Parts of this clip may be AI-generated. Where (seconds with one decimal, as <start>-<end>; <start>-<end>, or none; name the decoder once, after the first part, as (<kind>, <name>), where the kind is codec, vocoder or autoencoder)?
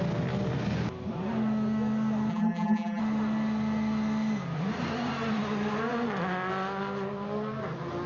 2.3-3.0 (vocoder, BigVGAN v2)